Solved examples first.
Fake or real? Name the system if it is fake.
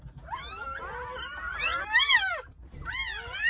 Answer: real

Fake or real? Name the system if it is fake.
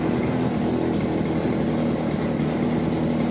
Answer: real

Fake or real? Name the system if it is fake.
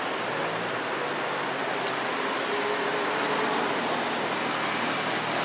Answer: real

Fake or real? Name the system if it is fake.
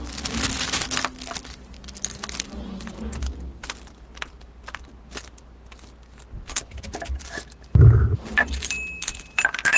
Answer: real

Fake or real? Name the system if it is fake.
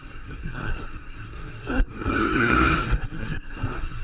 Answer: fake, codec, SNAC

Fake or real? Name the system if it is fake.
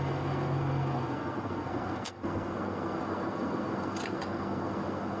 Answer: fake, codec, SNAC